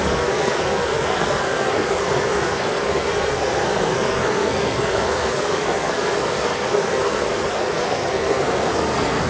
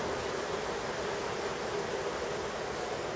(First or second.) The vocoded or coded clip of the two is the first